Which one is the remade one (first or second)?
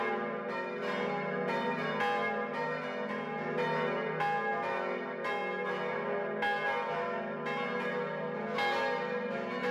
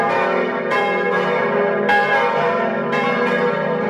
second